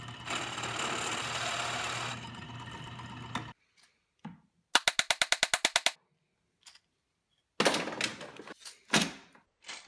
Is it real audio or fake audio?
real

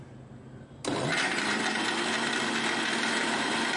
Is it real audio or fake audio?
real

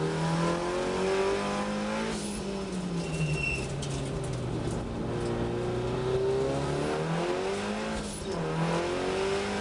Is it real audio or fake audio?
real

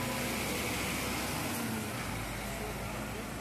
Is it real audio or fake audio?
real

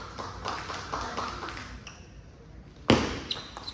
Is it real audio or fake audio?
real